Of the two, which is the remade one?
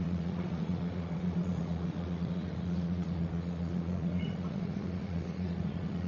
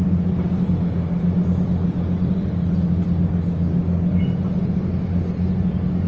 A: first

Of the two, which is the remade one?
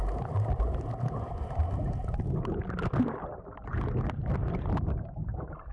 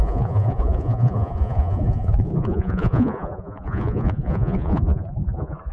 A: second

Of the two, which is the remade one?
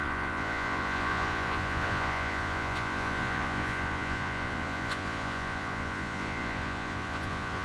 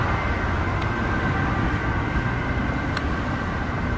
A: first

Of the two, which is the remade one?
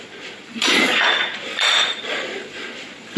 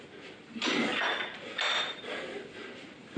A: first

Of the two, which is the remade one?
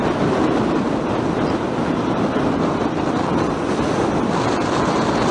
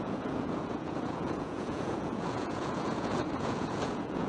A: second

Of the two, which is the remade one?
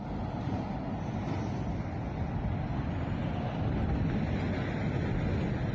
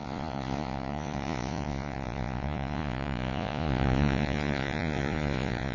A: second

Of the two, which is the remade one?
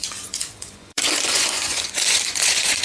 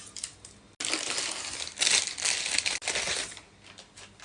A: first